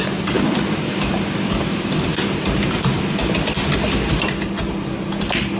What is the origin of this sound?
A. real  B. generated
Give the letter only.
A